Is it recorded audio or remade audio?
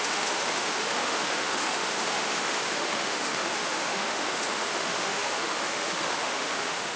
remade